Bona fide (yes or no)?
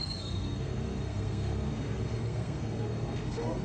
no